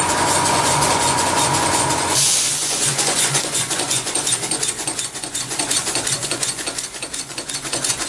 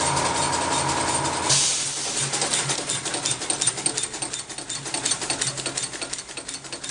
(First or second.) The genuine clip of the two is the second